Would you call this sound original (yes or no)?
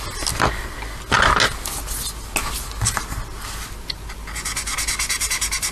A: yes